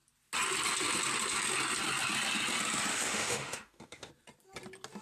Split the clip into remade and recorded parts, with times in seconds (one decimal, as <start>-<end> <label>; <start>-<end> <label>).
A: 0.0-2.9 recorded; 2.9-4.1 remade; 4.1-5.0 recorded